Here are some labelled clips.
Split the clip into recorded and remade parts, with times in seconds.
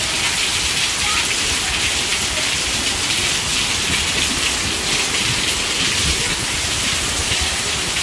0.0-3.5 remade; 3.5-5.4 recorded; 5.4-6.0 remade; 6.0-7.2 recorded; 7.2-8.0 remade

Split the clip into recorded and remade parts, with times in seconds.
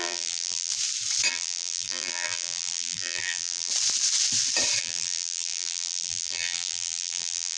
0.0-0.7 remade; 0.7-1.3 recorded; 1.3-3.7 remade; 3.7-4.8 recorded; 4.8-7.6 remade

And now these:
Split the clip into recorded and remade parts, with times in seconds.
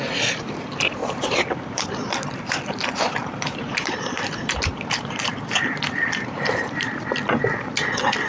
0.0-1.0 recorded; 1.0-1.9 remade; 1.9-3.2 recorded; 3.2-7.0 remade; 7.0-8.3 recorded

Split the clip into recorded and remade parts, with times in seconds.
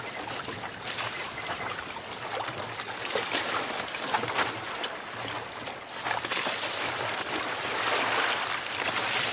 0.0-9.3 recorded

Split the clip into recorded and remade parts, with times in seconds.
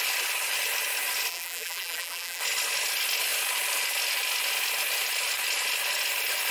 0.0-1.3 recorded; 1.3-2.4 remade; 2.4-6.5 recorded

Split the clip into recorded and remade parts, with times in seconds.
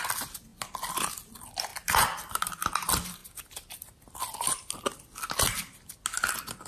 0.0-1.7 recorded; 1.7-2.5 remade; 2.5-6.7 recorded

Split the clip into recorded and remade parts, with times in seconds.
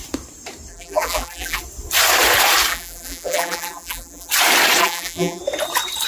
0.0-0.7 recorded; 0.7-1.6 remade; 1.6-2.7 recorded; 2.7-4.3 remade; 4.3-4.8 recorded; 4.8-5.4 remade; 5.4-6.1 recorded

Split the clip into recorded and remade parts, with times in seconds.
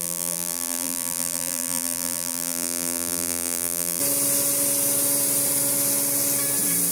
0.0-4.0 remade; 4.0-6.9 recorded